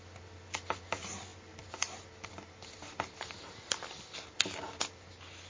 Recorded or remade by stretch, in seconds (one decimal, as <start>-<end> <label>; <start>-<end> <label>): 0.0-5.5 recorded